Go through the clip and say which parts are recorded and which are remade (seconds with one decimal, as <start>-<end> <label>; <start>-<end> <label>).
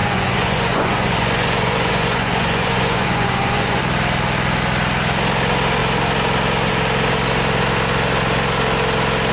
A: 0.0-3.8 remade; 3.8-9.3 recorded